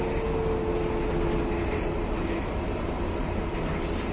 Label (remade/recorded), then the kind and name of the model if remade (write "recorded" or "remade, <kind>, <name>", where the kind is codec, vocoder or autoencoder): recorded